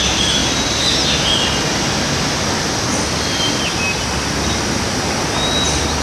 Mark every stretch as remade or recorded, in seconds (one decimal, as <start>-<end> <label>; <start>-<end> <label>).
0.0-6.0 recorded